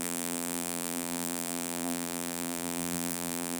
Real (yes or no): no